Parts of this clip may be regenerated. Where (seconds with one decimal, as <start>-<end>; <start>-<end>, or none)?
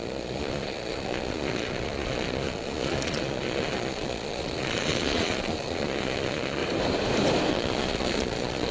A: 0.0-6.6; 7.5-8.7